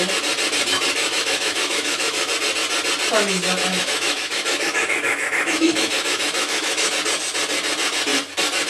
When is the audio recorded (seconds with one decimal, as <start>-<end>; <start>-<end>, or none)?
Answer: 0.0-1.0; 2.3-3.7; 6.9-8.7